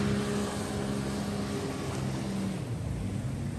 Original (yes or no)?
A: yes